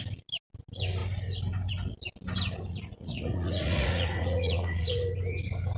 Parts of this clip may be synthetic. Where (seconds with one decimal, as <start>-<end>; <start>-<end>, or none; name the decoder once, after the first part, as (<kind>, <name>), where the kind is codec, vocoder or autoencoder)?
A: 2.7-4.9 (vocoder, Vocos)